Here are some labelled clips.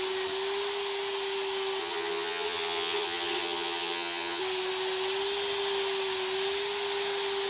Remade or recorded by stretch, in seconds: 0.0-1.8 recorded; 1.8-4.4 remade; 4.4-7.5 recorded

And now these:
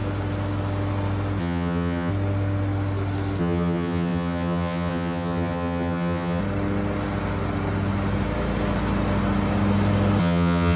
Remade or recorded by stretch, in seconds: 0.0-1.4 recorded; 1.4-2.1 remade; 2.1-3.4 recorded; 3.4-6.4 remade; 6.4-10.2 recorded; 10.2-10.8 remade

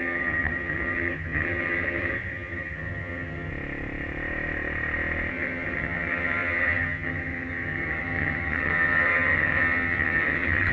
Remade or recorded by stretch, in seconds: 0.0-3.5 remade; 3.5-5.3 recorded; 5.3-10.7 remade

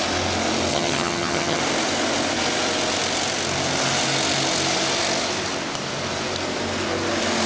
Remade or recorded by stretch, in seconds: 0.0-0.7 recorded; 0.7-1.6 remade; 1.6-7.5 recorded

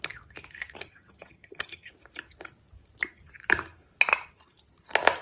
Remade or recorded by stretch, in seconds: 0.0-0.9 recorded; 0.9-1.9 remade; 1.9-5.2 recorded